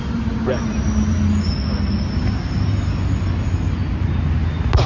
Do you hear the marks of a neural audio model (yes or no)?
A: no